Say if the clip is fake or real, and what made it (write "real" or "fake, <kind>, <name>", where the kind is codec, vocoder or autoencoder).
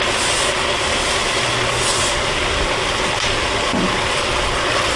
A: real